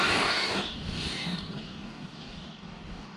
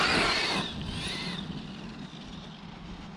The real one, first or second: second